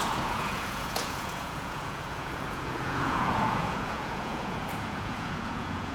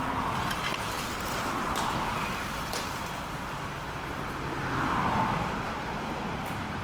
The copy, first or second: first